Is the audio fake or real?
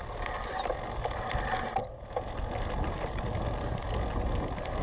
real